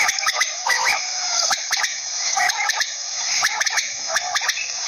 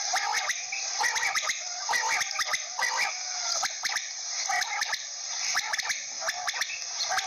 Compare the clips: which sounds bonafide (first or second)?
second